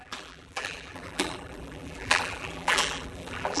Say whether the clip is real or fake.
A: fake